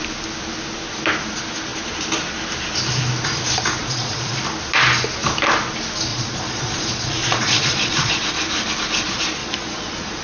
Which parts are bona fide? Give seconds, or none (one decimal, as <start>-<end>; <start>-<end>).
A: 0.0-3.8; 4.4-6.1; 8.3-9.4